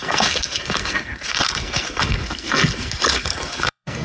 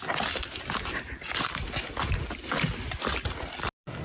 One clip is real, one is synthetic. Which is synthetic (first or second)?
first